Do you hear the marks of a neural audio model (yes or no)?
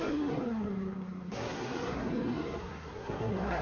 yes